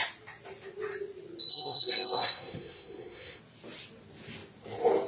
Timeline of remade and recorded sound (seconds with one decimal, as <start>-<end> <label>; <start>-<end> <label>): 0.0-1.5 recorded; 1.5-3.4 remade; 3.4-5.1 recorded